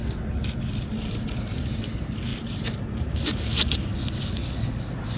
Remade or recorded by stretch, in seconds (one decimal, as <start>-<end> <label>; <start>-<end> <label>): 0.0-2.3 recorded; 2.3-3.9 remade; 3.9-5.2 recorded